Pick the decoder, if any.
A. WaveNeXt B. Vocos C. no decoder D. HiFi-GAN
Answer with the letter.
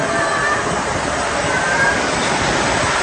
C